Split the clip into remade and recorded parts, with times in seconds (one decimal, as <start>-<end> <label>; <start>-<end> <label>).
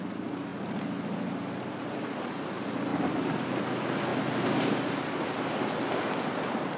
0.0-6.8 recorded